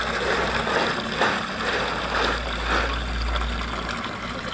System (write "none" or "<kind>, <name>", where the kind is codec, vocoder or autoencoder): none